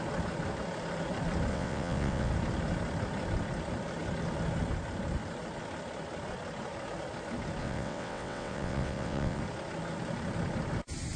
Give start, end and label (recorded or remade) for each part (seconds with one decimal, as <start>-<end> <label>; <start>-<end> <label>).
0.0-1.5 recorded; 1.5-2.3 remade; 2.3-7.6 recorded; 7.6-9.4 remade; 9.4-11.2 recorded